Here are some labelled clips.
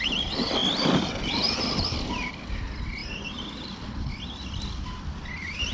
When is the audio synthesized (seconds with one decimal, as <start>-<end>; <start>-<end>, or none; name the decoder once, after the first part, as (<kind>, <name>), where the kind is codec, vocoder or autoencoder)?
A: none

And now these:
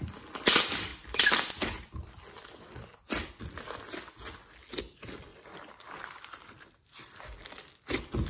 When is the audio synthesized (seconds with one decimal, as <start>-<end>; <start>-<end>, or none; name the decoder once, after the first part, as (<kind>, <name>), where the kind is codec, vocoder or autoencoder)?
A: 5.3-6.7 (vocoder, BigVGAN v2)

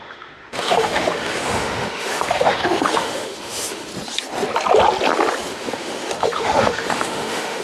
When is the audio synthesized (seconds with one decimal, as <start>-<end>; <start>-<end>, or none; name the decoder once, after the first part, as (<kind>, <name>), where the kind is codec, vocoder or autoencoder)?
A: 0.0-3.9 (autoencoder, DAC-VAE); 5.5-7.6

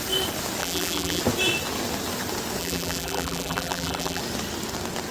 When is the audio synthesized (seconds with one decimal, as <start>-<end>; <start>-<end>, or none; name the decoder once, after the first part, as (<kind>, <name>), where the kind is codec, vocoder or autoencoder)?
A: 0.6-1.2 (vocoder, BigVGAN v2); 2.6-4.2

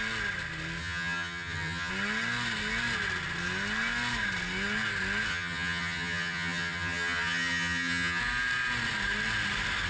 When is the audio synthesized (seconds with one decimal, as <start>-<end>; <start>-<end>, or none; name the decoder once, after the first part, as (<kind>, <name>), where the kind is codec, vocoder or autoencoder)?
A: 0.8-1.9 (vocoder, HiFi-GAN); 5.3-8.2